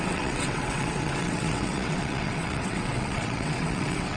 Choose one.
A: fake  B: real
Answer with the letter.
A